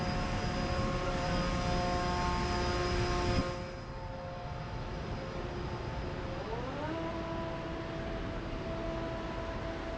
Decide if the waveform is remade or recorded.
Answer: recorded